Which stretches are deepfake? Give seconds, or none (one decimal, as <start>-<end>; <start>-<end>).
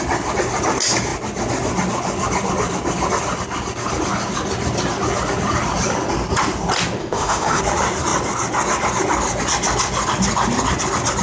7.0-7.6